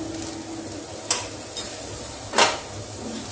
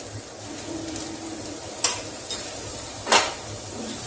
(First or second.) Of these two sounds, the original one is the first